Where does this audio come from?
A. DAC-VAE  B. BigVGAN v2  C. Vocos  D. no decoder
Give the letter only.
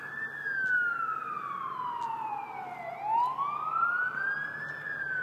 D